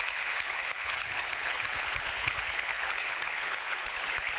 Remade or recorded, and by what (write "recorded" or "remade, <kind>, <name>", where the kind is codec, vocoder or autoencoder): remade, codec, HILCodec